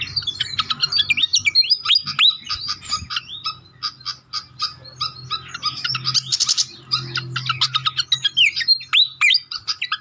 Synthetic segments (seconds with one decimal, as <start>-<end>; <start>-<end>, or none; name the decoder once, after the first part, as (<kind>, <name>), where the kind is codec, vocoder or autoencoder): none